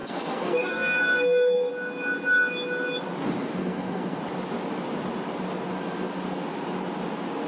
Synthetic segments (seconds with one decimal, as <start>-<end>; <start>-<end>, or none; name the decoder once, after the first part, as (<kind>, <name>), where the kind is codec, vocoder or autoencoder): 0.0-1.7 (codec, SNAC); 3.6-4.2